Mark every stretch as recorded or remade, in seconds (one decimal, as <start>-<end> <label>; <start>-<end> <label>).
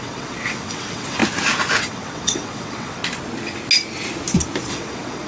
0.0-1.2 remade; 1.2-1.8 recorded; 1.8-3.0 remade; 3.0-4.7 recorded; 4.7-5.3 remade